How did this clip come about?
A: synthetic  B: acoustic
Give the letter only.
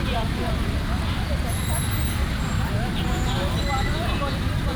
A